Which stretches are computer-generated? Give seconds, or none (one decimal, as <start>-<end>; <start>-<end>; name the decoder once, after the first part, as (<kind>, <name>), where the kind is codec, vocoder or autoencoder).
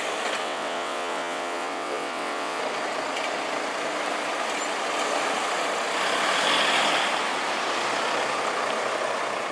0.4-2.6 (vocoder, WaveNeXt)